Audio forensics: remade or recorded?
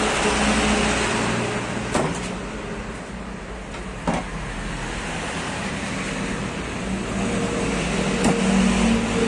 recorded